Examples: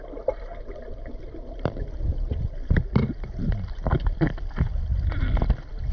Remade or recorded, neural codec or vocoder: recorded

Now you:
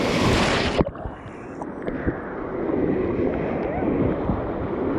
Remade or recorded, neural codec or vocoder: recorded